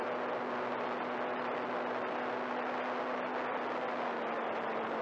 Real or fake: real